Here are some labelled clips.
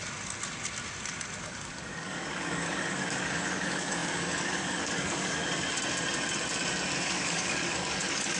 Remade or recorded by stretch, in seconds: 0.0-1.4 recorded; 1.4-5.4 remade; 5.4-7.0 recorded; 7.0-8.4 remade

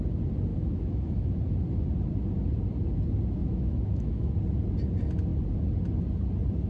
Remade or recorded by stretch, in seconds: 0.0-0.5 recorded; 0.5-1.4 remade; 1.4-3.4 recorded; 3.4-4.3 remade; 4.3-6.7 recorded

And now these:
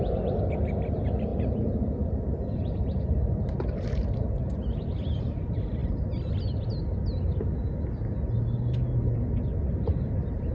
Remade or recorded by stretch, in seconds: 0.0-10.5 recorded